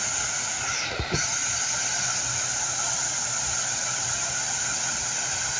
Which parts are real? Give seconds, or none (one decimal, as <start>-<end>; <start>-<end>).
1.4-4.6; 5.0-5.6